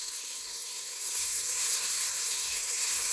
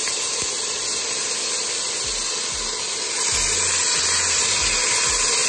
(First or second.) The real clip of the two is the second